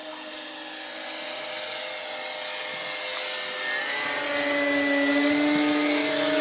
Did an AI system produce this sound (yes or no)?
no